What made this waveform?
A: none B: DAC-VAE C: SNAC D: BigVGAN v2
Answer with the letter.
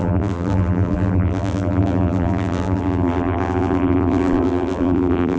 D